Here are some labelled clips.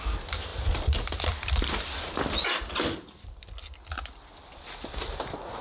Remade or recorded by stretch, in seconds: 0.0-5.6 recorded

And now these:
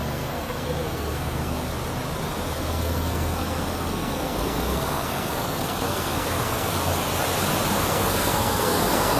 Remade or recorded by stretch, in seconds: 0.0-1.7 remade; 1.7-2.5 recorded; 2.5-6.9 remade; 6.9-7.7 recorded; 7.7-9.2 remade

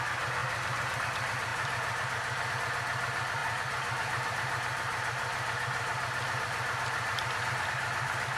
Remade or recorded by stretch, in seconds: 0.0-0.4 recorded; 0.4-1.0 remade; 1.0-1.5 recorded; 1.5-2.5 remade; 2.5-3.4 recorded; 3.4-7.7 remade; 7.7-8.4 recorded